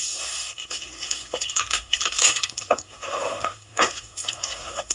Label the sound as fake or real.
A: fake